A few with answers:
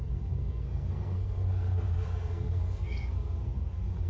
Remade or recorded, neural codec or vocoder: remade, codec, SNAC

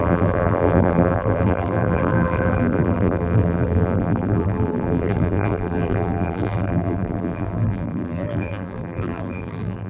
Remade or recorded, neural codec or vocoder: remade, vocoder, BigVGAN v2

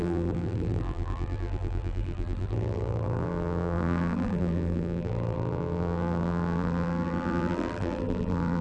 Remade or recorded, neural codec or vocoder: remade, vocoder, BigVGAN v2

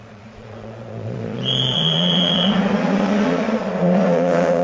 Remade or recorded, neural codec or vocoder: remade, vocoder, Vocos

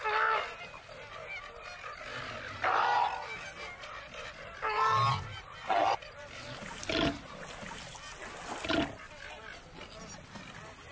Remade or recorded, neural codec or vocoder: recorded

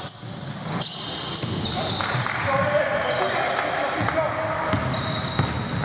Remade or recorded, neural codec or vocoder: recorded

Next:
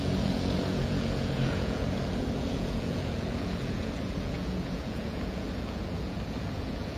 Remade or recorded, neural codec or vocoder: remade, vocoder, Vocos